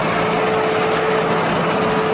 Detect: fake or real real